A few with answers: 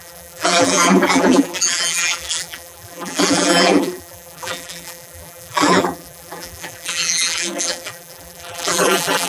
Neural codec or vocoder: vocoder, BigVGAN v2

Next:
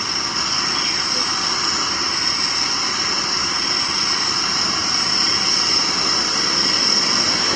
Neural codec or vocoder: none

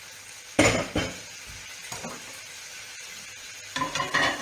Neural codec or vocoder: none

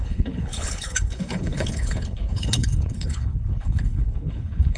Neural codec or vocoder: codec, HILCodec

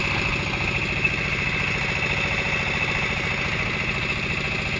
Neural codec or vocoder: none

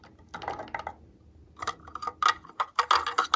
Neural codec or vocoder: none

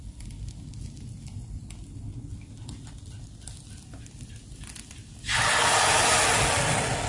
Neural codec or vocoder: none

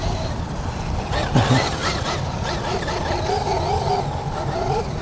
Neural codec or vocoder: none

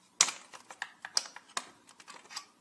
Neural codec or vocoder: none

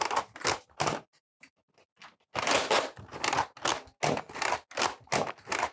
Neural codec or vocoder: none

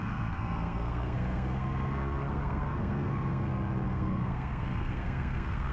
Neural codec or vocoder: codec, SNAC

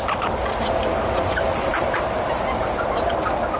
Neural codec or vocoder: none